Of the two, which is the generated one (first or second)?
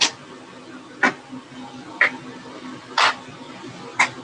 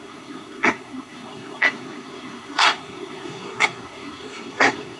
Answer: second